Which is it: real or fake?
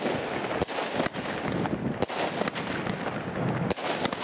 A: real